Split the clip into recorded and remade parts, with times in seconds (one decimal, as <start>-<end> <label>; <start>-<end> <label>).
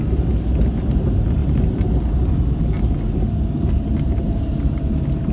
0.0-5.3 recorded